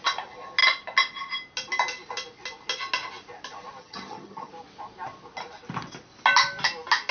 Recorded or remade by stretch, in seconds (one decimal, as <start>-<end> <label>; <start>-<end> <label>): 0.0-3.8 recorded; 3.8-4.5 remade; 4.5-7.1 recorded